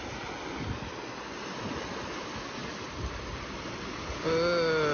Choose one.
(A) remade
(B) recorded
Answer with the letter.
B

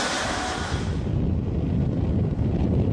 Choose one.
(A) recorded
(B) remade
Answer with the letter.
A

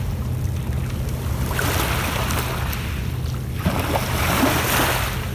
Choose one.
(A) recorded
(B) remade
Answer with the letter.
A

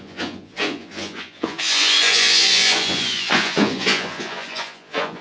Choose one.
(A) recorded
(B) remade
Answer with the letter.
B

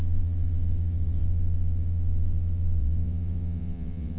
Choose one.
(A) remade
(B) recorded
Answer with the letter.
A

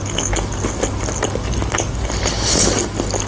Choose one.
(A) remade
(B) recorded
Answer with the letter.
B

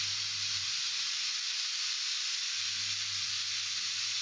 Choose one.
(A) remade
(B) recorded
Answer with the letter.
A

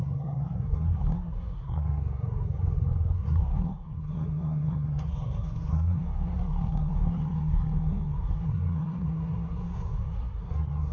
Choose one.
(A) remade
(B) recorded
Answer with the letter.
A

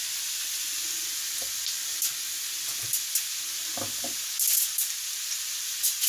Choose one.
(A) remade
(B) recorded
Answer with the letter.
B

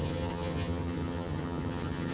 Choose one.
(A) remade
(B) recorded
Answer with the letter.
A